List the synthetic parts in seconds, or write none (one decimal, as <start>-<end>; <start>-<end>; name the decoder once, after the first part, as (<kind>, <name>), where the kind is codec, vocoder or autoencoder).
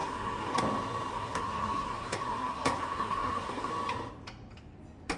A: 0.0-0.6 (codec, SNAC); 1.1-3.7